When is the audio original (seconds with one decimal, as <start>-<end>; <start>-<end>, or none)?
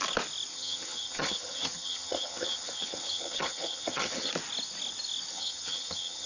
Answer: 0.0-0.5; 4.3-5.3